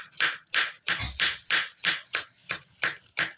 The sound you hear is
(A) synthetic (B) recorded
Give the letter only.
B